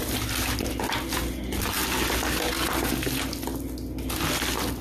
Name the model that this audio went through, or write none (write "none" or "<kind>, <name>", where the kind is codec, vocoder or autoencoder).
none